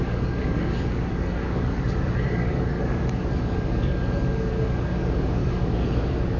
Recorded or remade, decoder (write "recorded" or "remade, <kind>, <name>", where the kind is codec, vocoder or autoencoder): remade, codec, DAC